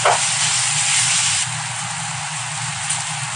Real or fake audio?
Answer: real